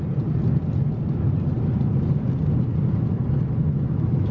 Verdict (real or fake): real